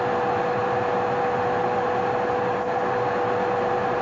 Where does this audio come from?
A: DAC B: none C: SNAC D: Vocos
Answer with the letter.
B